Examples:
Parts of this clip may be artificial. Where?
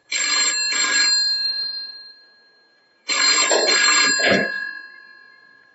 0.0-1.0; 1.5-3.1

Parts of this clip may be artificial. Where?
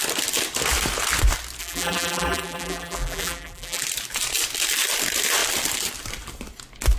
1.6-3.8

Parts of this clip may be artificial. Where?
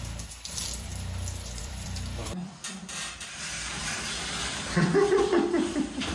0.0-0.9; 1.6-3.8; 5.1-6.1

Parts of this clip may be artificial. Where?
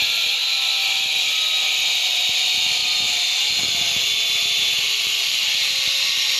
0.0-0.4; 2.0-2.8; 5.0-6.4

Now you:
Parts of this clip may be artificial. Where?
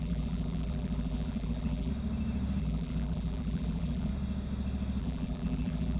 0.0-1.9; 2.6-4.1; 5.0-6.0